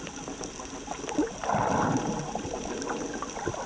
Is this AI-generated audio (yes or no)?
no